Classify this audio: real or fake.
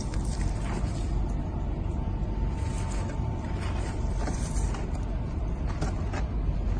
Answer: real